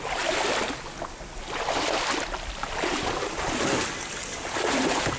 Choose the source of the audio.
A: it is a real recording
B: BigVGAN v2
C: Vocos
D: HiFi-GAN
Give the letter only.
A